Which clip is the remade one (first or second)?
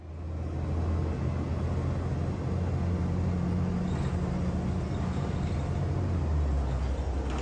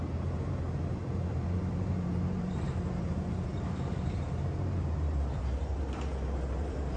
second